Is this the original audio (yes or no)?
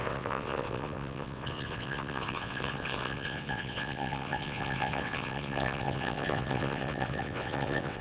no